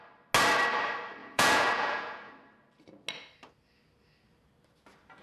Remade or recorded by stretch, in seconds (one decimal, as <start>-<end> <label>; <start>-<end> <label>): 0.0-1.2 recorded; 1.2-2.3 remade; 2.3-5.2 recorded